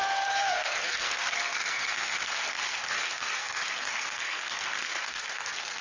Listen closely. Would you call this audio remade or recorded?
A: remade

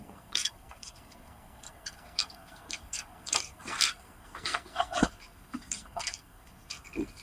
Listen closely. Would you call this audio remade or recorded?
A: remade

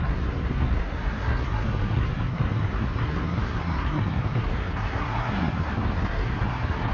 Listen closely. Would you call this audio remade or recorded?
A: remade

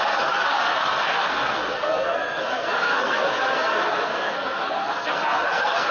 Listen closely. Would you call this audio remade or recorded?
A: remade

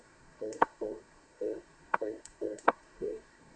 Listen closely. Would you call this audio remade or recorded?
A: remade